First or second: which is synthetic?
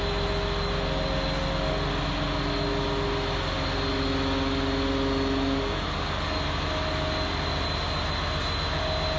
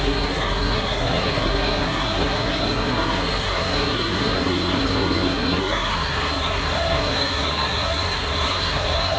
second